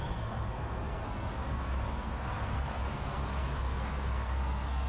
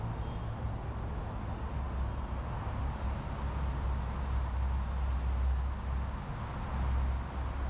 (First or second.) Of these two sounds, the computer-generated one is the first